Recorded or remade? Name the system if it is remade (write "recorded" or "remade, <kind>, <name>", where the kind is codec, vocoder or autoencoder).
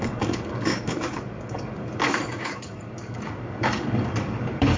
remade, codec, DAC